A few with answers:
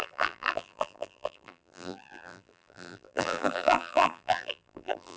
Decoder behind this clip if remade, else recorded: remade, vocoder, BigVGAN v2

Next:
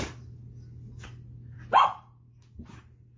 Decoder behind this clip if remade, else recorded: recorded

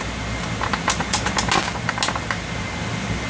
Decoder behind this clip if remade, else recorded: recorded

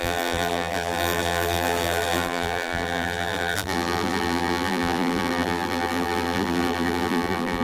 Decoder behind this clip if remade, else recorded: remade, vocoder, BigVGAN v2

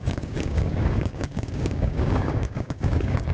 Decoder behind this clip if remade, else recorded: remade, codec, DAC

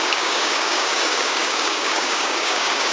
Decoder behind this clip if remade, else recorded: remade, codec, DAC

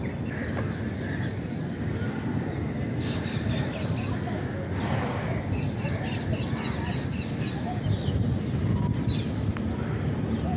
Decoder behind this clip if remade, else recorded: recorded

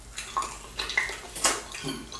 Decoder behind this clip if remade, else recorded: recorded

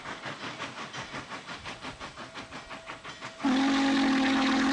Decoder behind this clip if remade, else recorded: recorded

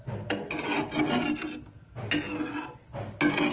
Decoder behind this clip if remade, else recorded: recorded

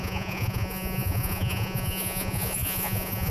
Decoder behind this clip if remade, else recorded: remade, vocoder, Vocos